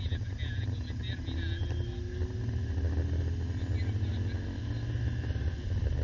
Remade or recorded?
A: recorded